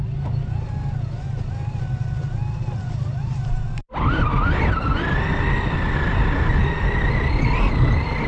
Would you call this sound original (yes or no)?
yes